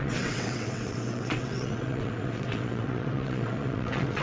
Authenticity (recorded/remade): remade